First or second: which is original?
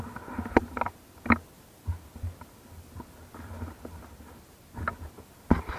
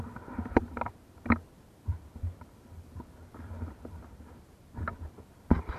first